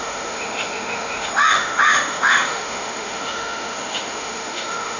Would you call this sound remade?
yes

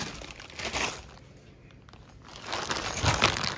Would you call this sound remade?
no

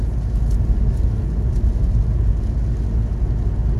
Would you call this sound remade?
no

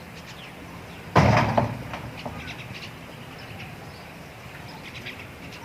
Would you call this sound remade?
no